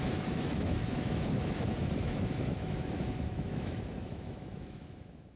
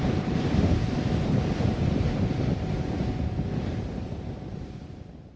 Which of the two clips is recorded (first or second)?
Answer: second